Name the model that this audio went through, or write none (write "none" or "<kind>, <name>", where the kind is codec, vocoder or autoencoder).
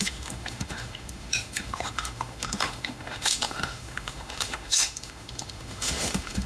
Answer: autoencoder, DAC-VAE